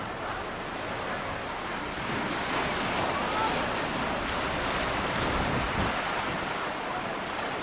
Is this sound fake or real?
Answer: real